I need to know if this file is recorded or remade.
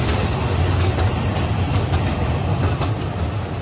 recorded